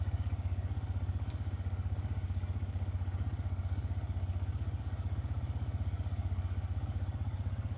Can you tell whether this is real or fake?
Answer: fake